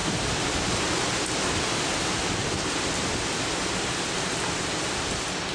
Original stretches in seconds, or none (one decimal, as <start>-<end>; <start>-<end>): 0.9-2.4; 4.5-5.5